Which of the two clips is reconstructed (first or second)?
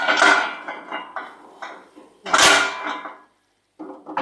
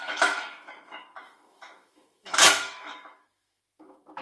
second